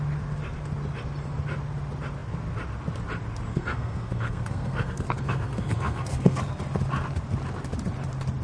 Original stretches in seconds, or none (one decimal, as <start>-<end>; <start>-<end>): 0.0-3.5; 6.4-8.4